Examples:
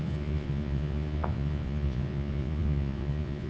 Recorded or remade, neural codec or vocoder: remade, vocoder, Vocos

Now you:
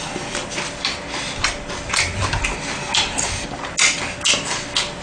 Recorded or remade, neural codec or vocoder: recorded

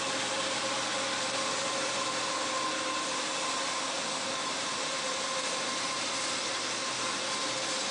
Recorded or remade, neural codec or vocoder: recorded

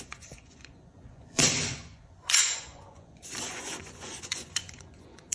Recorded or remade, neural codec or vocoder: remade, vocoder, Vocos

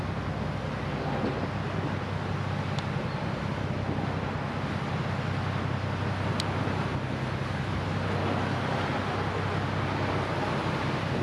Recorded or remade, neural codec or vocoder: recorded